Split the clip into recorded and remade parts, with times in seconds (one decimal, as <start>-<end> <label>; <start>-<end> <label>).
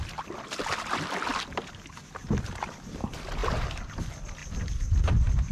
0.0-5.5 recorded